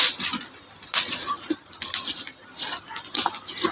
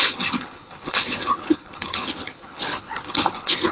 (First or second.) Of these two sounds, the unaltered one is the first